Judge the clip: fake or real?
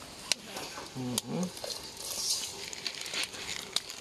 real